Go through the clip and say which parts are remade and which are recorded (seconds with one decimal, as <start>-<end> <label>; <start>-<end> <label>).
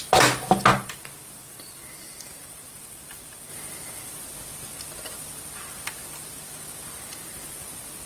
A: 0.0-0.7 recorded; 0.7-3.5 remade; 3.5-8.1 recorded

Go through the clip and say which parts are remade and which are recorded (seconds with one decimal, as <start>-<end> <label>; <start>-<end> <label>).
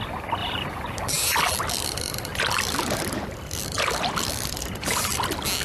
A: 0.0-0.4 recorded; 0.4-1.1 remade; 1.1-5.6 recorded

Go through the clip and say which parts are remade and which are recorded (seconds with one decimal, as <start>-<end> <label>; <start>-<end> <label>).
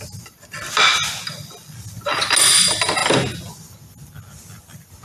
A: 0.0-5.0 recorded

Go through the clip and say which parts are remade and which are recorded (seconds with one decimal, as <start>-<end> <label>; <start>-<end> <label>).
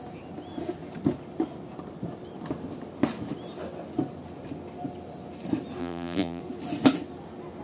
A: 0.0-5.8 recorded; 5.8-6.4 remade; 6.4-7.6 recorded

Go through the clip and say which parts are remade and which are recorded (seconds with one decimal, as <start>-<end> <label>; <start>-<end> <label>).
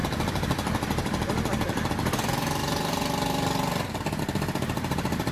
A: 0.0-5.3 remade